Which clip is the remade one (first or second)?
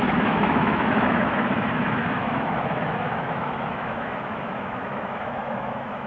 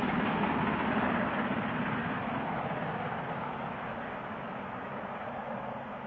first